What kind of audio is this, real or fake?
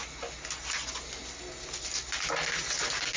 real